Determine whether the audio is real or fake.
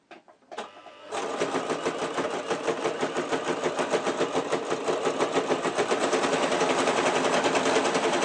fake